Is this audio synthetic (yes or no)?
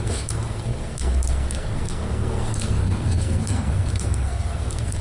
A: yes